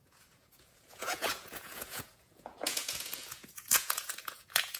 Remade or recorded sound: remade